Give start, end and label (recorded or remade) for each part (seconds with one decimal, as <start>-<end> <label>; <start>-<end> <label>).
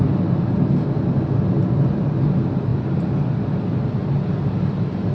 0.0-5.1 recorded